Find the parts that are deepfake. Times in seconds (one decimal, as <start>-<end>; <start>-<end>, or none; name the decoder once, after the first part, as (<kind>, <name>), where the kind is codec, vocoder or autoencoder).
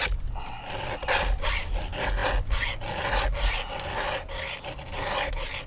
none